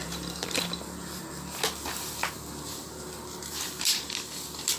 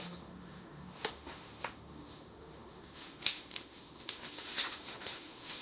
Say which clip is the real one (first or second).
first